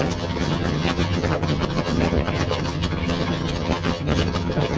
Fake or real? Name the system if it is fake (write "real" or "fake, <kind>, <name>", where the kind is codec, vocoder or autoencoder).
fake, vocoder, HiFi-GAN